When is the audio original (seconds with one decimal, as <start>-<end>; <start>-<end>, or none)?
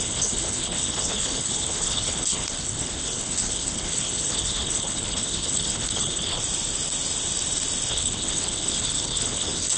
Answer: 6.4-7.9